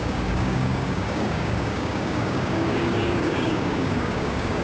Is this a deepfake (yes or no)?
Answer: yes